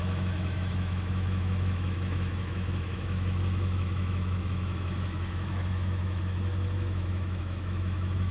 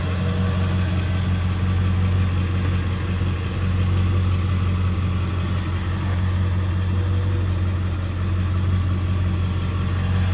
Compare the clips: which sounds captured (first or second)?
second